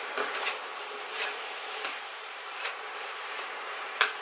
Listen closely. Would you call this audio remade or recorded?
remade